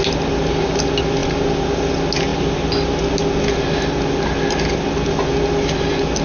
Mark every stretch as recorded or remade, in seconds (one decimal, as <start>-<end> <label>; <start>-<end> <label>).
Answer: 0.0-6.2 recorded